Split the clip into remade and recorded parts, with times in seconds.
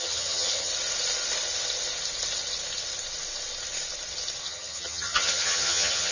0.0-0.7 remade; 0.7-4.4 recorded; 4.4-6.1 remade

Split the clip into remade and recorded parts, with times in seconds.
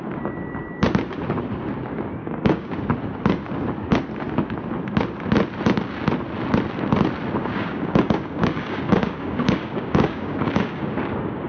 0.0-2.2 recorded; 2.2-2.7 remade; 2.7-7.4 recorded; 7.4-11.5 remade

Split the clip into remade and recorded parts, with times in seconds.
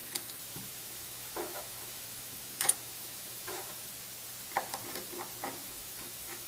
0.0-3.9 remade; 3.9-5.6 recorded; 5.6-6.5 remade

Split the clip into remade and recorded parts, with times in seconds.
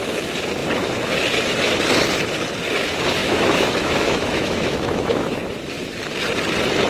0.0-3.2 recorded; 3.2-5.4 remade; 5.4-6.9 recorded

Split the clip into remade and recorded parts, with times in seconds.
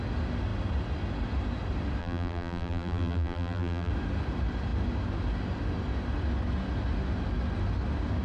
0.0-2.0 recorded; 2.0-3.9 remade; 3.9-8.2 recorded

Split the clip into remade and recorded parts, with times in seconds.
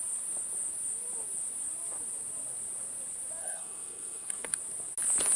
0.0-3.4 recorded; 3.4-4.6 remade; 4.6-5.4 recorded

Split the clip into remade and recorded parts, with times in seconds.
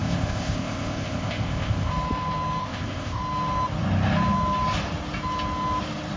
0.0-1.9 remade; 1.9-2.6 recorded; 2.6-3.2 remade; 3.2-6.2 recorded